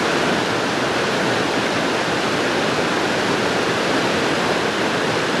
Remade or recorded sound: recorded